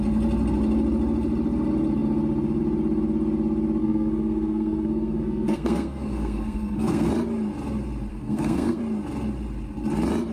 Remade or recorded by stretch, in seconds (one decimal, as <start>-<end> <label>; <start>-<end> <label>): 0.0-3.8 recorded; 3.8-7.1 remade; 7.1-8.1 recorded; 8.1-8.8 remade; 8.8-10.3 recorded